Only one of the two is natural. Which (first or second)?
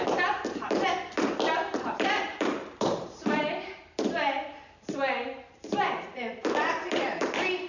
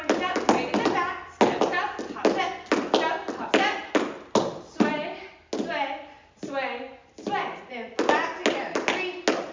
second